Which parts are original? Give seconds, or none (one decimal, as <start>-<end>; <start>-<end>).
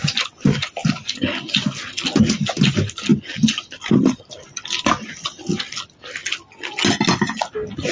0.0-3.1; 5.8-7.9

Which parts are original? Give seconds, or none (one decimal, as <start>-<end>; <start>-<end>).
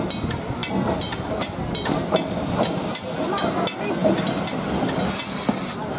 0.0-6.0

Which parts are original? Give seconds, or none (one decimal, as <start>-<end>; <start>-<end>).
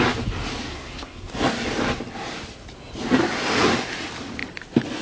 0.0-0.7; 1.3-5.0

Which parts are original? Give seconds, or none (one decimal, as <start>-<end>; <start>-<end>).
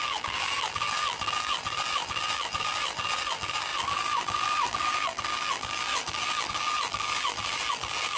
none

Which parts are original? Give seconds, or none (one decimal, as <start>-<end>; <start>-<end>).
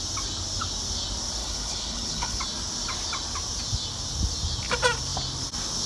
0.0-1.4; 2.4-5.9